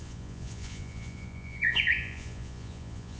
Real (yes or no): no